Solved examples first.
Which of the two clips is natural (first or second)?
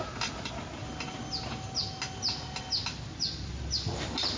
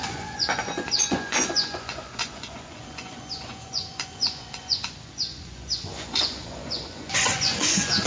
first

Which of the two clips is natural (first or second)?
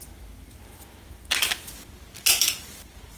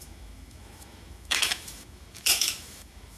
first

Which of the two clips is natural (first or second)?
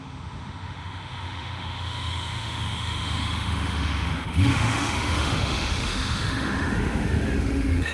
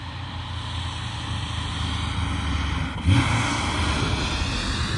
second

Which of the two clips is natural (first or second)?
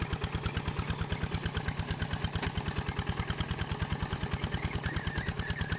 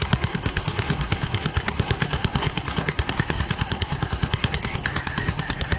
first